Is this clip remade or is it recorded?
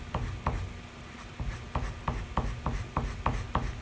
recorded